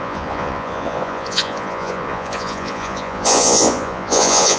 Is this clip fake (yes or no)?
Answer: yes